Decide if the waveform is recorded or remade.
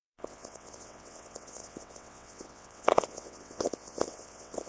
remade